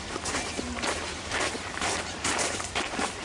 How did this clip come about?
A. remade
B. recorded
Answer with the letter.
A